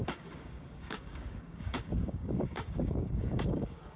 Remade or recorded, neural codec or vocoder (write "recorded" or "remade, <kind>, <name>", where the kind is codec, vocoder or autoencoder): remade, codec, DAC